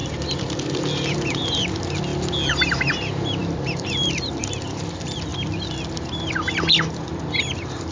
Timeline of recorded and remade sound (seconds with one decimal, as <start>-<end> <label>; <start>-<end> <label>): 0.0-2.1 remade; 2.1-2.9 recorded; 2.9-5.3 remade; 5.3-6.9 recorded; 6.9-7.9 remade